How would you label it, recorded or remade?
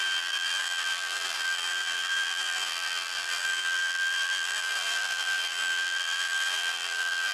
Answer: remade